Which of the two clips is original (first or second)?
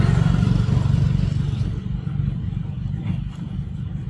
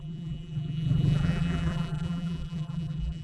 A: first